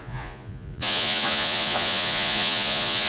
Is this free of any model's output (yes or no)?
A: no